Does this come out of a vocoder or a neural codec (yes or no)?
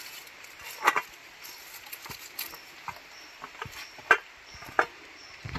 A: no